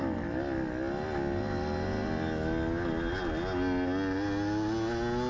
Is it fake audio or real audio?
real